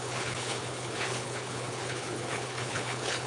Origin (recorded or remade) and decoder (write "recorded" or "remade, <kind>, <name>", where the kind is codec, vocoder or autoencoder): remade, codec, HILCodec